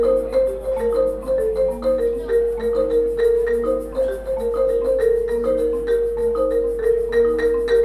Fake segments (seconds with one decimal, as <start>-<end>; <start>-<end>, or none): none